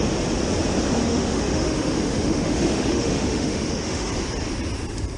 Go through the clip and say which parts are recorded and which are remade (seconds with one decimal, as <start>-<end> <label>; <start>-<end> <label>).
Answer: 0.0-1.0 recorded; 1.0-4.1 remade; 4.1-5.2 recorded